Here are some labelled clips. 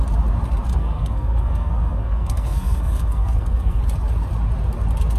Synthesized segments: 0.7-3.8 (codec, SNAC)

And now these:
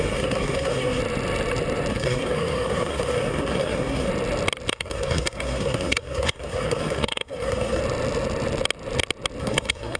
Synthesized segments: 0.0-1.0 (codec, SNAC); 1.9-4.1; 4.7-7.8; 9.4-10.0

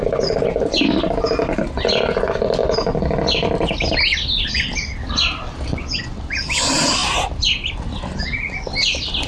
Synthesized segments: none

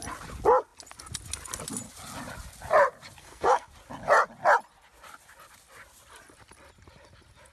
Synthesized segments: 3.2-3.7 (codec, SNAC)

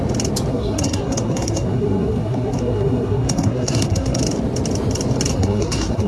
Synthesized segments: 0.5-4.2 (codec, SNAC); 5.3-6.1

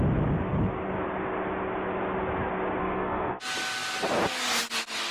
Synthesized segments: 2.8-3.4 (codec, SNAC)